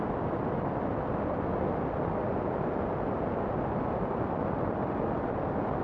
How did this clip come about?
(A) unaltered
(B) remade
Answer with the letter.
A